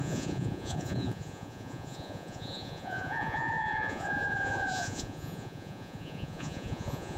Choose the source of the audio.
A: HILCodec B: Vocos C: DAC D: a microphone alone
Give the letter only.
B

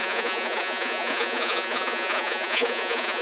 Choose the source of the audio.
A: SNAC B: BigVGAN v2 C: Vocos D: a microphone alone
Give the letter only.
C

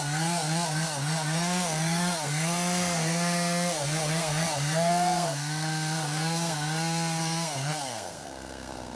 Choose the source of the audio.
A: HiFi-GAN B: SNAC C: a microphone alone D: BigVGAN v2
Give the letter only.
B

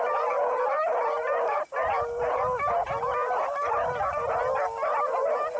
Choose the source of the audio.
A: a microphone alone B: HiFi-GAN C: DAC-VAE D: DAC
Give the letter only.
A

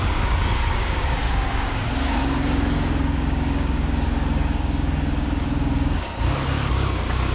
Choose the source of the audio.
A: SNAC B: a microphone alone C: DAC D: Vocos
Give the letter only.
C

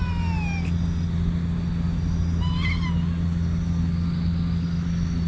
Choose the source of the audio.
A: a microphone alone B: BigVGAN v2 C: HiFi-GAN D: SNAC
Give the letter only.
A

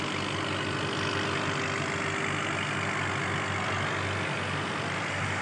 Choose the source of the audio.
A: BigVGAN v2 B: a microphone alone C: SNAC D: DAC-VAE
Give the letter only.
B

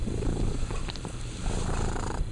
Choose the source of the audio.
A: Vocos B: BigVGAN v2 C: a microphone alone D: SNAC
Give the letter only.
B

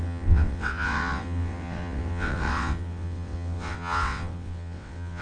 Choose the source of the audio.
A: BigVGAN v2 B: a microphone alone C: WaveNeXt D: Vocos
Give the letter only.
C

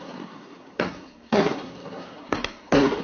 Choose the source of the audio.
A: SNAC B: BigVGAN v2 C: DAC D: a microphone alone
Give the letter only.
A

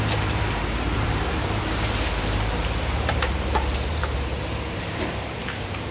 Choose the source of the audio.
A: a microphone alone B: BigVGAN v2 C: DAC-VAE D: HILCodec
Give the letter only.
B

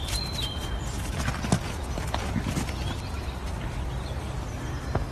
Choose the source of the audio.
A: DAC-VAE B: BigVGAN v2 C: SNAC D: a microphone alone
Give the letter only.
D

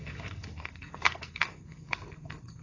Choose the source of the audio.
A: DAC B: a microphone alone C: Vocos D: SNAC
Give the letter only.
D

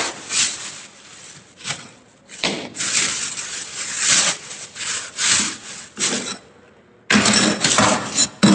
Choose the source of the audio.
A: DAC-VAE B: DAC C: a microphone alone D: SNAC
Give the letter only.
C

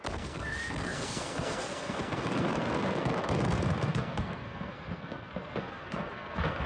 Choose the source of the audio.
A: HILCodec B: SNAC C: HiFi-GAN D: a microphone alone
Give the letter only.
B